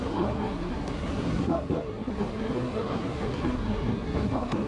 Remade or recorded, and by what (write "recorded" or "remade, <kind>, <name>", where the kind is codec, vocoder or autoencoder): remade, codec, SNAC